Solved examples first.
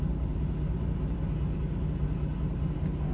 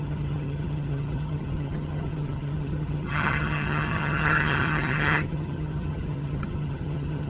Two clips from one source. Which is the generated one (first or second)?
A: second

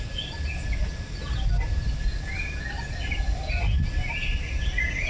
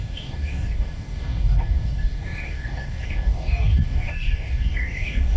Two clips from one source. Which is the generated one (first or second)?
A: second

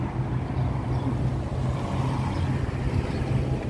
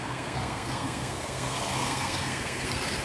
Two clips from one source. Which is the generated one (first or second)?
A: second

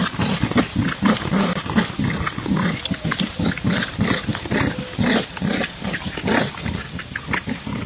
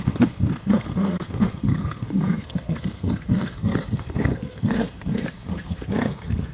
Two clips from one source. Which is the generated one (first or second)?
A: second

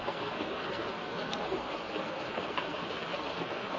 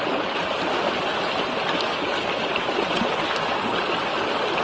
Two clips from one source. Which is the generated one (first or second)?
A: first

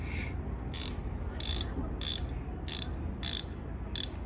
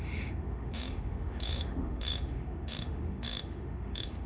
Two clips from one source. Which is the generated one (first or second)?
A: second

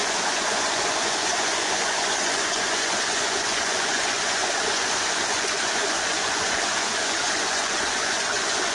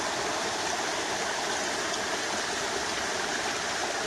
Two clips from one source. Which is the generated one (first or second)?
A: first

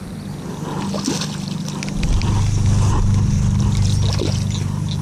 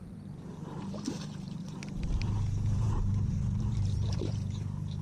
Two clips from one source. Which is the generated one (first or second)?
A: second